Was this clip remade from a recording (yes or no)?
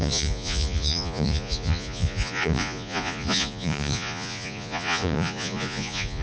yes